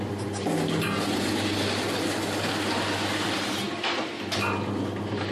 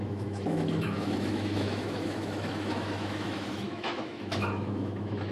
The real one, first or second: first